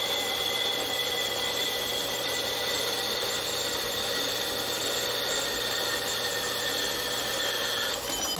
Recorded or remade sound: recorded